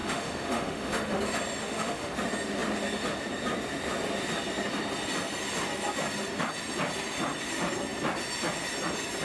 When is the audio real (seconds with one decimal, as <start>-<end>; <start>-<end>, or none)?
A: 1.2-1.6; 2.1-9.2